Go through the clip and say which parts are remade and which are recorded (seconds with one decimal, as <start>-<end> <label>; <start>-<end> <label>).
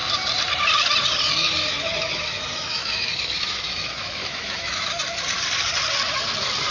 0.0-1.7 recorded; 1.7-4.9 remade; 4.9-6.7 recorded